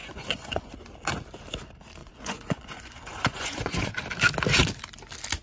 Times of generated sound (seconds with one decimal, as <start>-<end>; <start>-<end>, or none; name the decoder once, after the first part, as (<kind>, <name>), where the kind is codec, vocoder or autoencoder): 0.0-0.7 (vocoder, Vocos); 2.0-3.9

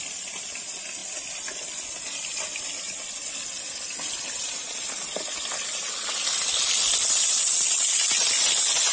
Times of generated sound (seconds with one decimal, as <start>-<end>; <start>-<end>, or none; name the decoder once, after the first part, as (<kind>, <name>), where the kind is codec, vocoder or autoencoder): none

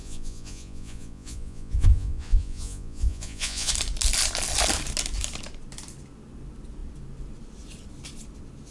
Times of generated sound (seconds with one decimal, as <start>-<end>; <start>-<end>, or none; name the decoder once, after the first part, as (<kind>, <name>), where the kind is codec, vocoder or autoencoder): 0.0-3.7 (vocoder, Vocos)

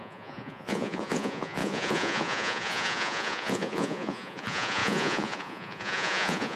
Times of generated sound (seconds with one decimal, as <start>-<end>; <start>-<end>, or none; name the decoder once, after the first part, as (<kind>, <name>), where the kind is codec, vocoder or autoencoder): 0.0-6.6 (vocoder, Vocos)

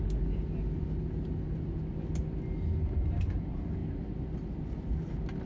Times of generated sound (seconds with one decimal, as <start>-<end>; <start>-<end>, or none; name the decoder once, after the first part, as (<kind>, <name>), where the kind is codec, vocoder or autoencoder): none

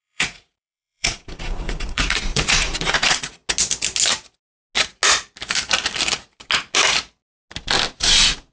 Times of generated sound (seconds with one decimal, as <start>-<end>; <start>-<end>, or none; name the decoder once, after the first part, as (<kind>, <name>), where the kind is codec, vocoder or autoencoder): 0.0-3.4 (vocoder, Vocos); 7.9-8.5

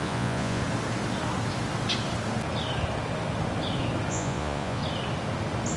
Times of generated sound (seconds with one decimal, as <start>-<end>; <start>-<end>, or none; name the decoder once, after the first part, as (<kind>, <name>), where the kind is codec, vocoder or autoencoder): 0.0-0.6 (vocoder, Vocos); 4.1-4.8

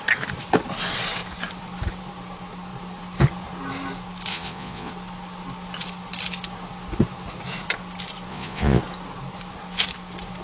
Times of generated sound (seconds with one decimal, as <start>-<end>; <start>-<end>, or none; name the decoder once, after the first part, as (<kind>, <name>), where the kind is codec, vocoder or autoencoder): 4.3-4.9 (vocoder, Vocos); 8.3-8.8